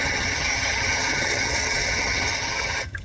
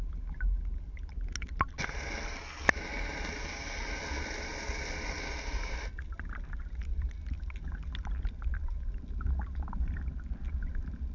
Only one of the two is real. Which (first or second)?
second